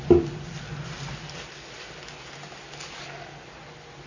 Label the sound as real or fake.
real